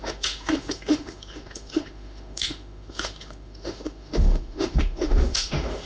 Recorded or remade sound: remade